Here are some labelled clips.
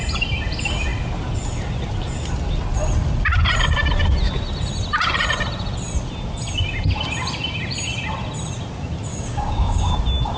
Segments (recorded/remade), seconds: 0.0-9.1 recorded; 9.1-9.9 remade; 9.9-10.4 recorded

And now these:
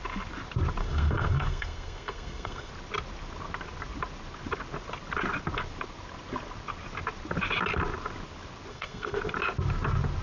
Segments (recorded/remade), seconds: 0.0-0.8 recorded; 0.8-2.7 remade; 2.7-8.7 recorded; 8.7-9.2 remade; 9.2-10.2 recorded

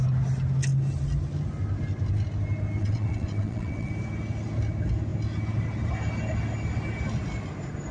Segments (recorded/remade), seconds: 0.0-2.8 recorded; 2.8-3.9 remade; 3.9-7.9 recorded

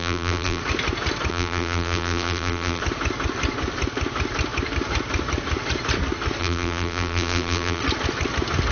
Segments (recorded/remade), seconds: 0.0-0.6 remade; 0.6-1.3 recorded; 1.3-2.8 remade; 2.8-6.4 recorded; 6.4-7.8 remade; 7.8-8.7 recorded

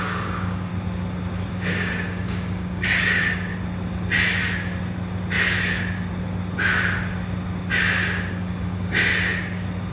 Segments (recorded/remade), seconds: 0.0-0.7 remade; 0.7-1.5 recorded; 1.5-3.5 remade; 3.5-8.3 recorded; 8.3-9.1 remade; 9.1-9.9 recorded

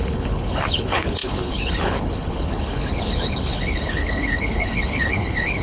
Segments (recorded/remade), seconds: 0.0-5.6 remade